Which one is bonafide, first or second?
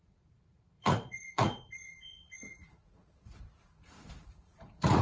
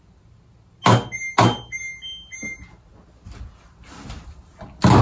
second